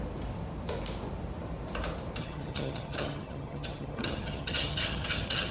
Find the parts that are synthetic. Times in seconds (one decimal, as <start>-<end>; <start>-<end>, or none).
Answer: 2.2-5.5